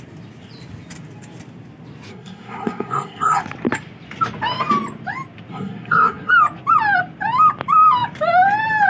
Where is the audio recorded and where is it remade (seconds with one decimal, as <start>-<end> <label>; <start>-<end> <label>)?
0.0-2.1 recorded; 2.1-3.4 remade; 3.4-5.5 recorded; 5.5-6.3 remade; 6.3-8.9 recorded